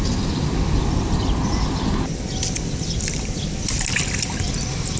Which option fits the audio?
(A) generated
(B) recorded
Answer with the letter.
B